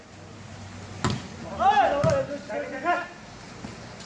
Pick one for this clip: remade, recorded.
recorded